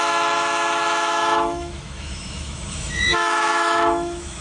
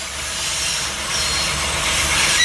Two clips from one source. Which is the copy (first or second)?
first